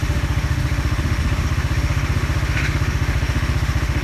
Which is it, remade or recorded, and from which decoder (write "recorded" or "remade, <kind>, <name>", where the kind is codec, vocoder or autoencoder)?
remade, autoencoder, DAC-VAE